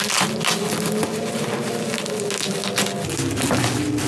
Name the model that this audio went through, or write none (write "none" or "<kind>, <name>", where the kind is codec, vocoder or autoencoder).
none